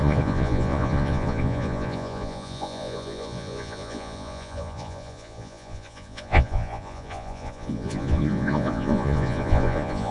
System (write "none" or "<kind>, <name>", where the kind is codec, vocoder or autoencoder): vocoder, Vocos